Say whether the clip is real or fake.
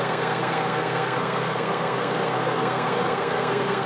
fake